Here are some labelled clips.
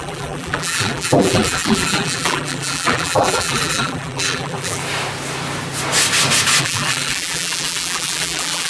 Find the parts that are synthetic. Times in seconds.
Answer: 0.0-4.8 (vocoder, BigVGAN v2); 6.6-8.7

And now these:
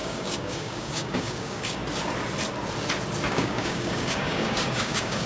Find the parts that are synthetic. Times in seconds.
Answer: 0.0-1.8 (codec, DAC); 3.3-5.3

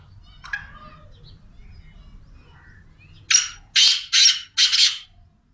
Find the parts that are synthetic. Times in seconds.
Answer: none

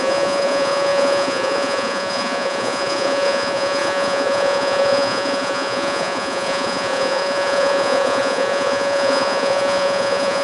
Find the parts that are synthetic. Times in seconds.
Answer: 0.0-10.4 (vocoder, Vocos)

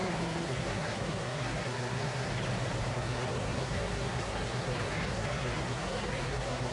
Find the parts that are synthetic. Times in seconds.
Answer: 0.0-2.3 (codec, SNAC); 2.9-6.7

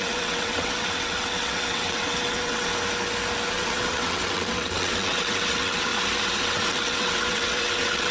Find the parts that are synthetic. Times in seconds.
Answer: 0.0-2.7 (vocoder, WaveNeXt); 3.5-5.9; 6.4-8.1

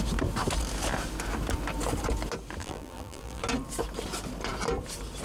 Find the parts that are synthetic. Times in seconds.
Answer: 2.6-3.4 (vocoder, BigVGAN v2)